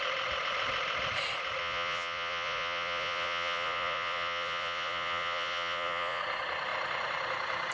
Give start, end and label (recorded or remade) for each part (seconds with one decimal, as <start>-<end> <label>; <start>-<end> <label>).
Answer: 0.0-1.6 recorded; 1.6-6.2 remade; 6.2-7.7 recorded